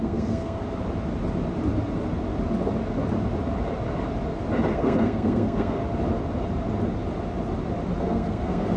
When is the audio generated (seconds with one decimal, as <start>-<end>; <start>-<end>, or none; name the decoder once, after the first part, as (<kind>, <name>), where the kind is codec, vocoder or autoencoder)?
0.0-0.6 (codec, SNAC); 4.7-5.8; 8.0-8.8